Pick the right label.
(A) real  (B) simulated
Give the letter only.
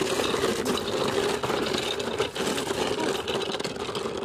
A